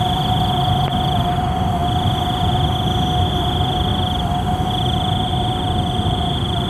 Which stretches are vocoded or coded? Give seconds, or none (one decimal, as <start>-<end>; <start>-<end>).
0.0-1.8; 3.3-3.9; 5.3-6.7